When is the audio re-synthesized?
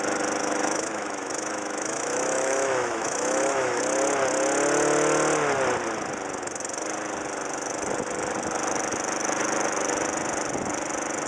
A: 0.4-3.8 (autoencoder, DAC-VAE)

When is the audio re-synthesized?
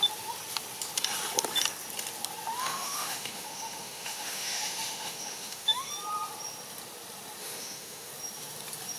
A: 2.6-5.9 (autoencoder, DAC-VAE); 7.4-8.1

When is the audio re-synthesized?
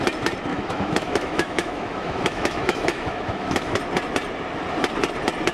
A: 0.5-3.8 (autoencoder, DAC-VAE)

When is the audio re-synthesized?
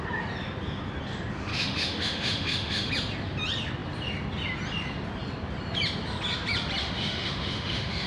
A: 1.5-2.9 (autoencoder, DAC-VAE); 6.8-8.1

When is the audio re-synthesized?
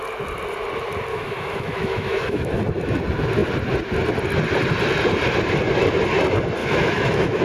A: 1.1-2.6 (autoencoder, DAC-VAE); 6.6-7.4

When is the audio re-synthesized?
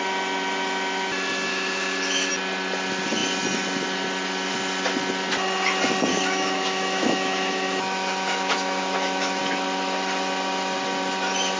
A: 1.5-2.3 (autoencoder, DAC-VAE); 6.1-9.4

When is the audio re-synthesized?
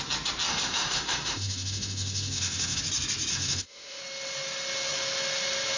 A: 0.5-2.8 (autoencoder, DAC-VAE); 3.3-4.0